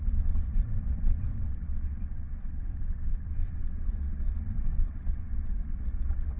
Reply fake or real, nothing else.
fake